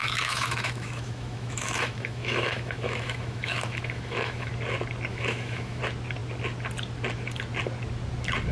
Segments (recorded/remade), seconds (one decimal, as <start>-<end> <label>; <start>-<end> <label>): 0.0-4.5 remade; 4.5-5.1 recorded; 5.1-5.8 remade; 5.8-8.5 recorded

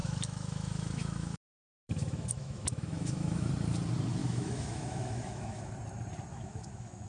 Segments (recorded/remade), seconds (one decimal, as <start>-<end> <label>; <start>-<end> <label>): 0.0-3.5 remade; 3.5-4.2 recorded; 4.2-5.7 remade; 5.7-6.3 recorded; 6.3-7.1 remade

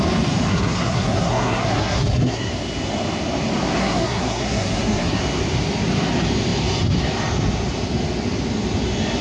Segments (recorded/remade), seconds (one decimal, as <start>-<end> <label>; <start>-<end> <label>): 0.0-0.5 recorded; 0.5-2.5 remade; 2.5-3.8 recorded; 3.8-5.2 remade; 5.2-9.2 recorded

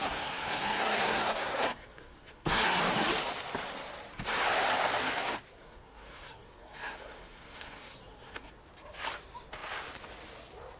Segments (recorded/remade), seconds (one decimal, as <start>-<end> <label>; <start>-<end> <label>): 0.0-2.8 remade; 2.8-5.6 recorded; 5.6-8.5 remade; 8.5-10.8 recorded

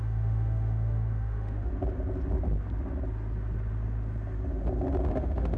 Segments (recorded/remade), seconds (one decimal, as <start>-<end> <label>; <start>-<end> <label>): 0.0-1.7 remade; 1.7-5.1 recorded; 5.1-5.6 remade

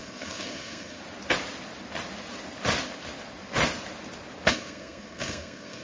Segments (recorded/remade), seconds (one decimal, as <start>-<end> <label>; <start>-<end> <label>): 0.0-1.0 remade; 1.0-4.5 recorded; 4.5-5.8 remade

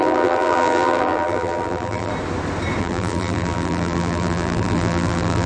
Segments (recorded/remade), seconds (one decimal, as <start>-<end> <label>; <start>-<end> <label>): 0.0-2.1 remade; 2.1-2.8 recorded; 2.8-5.5 remade